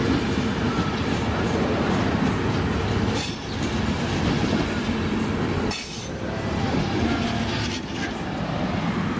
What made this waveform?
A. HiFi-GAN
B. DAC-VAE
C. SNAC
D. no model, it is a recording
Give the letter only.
D